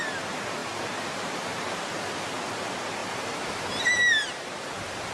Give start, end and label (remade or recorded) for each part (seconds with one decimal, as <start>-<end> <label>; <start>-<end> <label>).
0.0-0.6 recorded; 0.6-1.9 remade; 1.9-3.0 recorded; 3.0-3.6 remade; 3.6-5.1 recorded